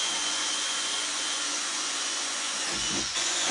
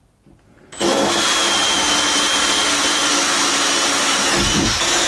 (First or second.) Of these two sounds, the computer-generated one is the first